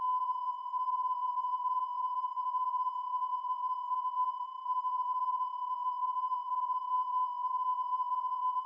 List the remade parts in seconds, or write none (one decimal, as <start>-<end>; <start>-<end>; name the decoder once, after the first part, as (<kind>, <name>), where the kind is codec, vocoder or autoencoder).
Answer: 0.0-8.7 (vocoder, Vocos)